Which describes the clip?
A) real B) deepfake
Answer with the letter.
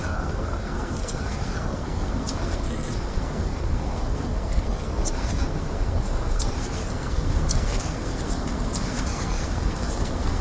B